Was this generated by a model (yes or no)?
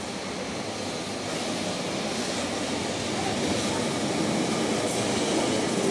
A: no